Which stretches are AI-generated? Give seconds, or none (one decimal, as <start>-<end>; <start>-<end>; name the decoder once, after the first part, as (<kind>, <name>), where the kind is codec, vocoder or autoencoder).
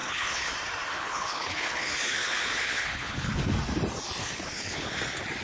0.0-0.5 (codec, HILCodec); 0.9-3.4; 4.2-5.0